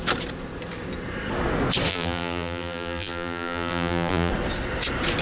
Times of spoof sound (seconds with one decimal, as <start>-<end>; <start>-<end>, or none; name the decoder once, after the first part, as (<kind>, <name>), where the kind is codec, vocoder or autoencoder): 1.9-4.3 (vocoder, BigVGAN v2)